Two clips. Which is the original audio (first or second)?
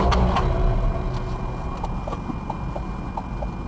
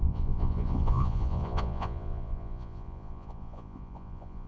first